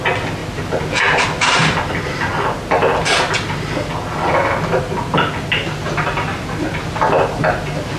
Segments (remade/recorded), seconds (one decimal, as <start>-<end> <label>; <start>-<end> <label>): 0.0-8.0 recorded